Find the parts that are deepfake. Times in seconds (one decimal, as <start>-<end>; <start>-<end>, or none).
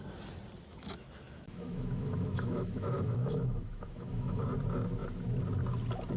0.7-4.4